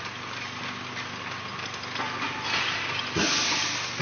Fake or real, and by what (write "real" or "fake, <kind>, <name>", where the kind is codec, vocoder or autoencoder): real